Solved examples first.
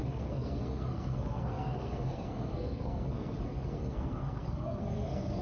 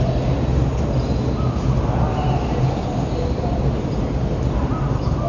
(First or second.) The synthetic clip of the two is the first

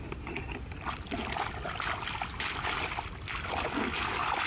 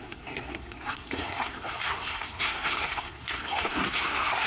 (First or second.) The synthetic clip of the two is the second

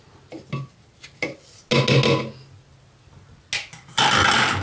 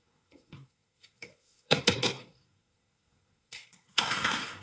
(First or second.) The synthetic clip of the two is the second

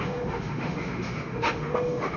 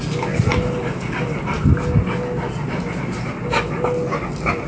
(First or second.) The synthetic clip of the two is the first